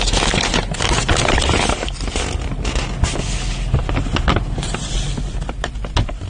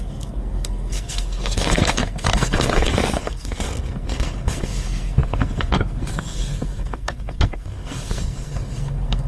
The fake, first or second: second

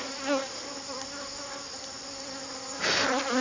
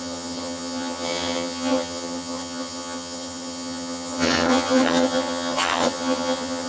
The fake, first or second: second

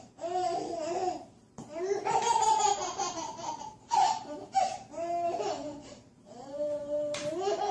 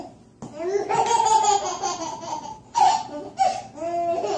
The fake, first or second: first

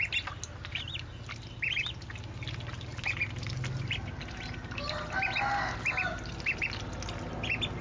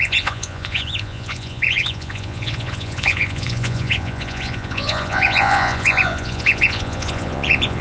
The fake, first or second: second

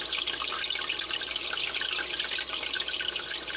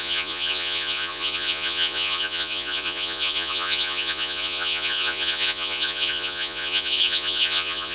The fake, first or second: second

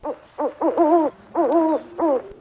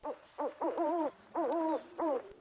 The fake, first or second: second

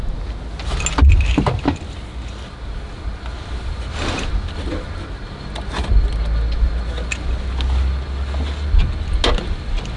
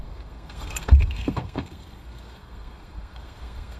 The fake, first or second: second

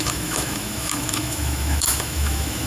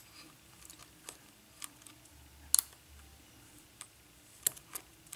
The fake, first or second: first